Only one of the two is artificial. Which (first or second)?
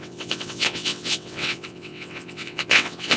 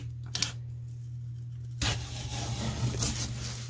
first